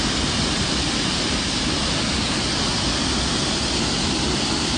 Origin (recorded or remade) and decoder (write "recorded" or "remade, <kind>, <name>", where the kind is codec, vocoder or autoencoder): recorded